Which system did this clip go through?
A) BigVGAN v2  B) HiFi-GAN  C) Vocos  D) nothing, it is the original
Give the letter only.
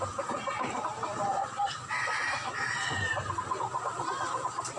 D